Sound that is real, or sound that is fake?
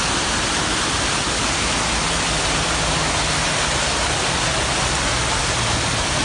real